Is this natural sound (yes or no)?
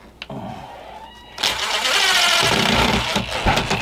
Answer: yes